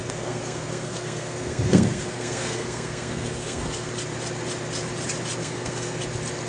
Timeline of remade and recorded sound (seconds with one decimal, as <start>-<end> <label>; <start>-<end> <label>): 0.0-3.9 remade; 3.9-5.4 recorded; 5.4-6.0 remade; 6.0-6.5 recorded